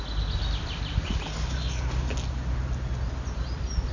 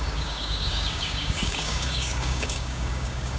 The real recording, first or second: first